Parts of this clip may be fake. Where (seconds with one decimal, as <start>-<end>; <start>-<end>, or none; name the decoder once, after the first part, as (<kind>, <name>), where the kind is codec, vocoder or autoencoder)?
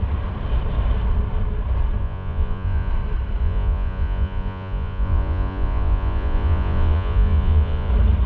2.0-2.9 (vocoder, Vocos); 3.4-7.9